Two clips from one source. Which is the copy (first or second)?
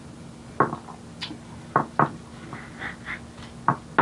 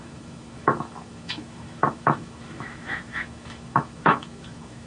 second